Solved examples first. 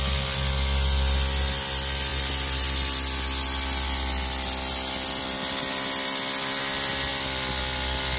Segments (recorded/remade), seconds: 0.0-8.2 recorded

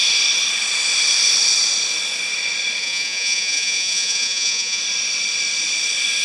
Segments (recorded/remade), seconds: 0.0-2.8 recorded; 2.8-4.8 remade; 4.8-6.2 recorded

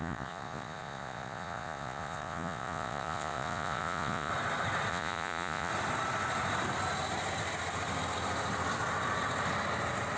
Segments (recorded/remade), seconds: 0.0-4.3 remade; 4.3-4.9 recorded; 4.9-5.7 remade; 5.7-10.2 recorded

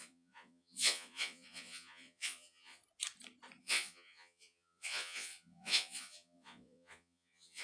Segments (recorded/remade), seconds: 0.0-2.8 remade; 2.8-3.6 recorded; 3.6-7.6 remade

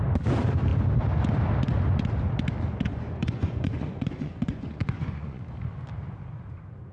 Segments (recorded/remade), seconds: 0.0-2.9 recorded; 2.9-5.4 remade; 5.4-6.9 recorded

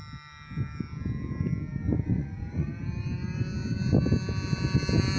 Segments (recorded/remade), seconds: 0.0-1.9 recorded; 1.9-2.7 remade; 2.7-5.2 recorded

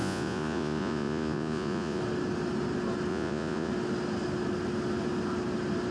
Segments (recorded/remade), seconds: 0.0-2.0 remade; 2.0-3.1 recorded; 3.1-3.7 remade; 3.7-5.9 recorded

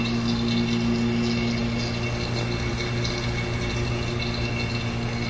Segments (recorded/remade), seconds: 0.0-5.3 recorded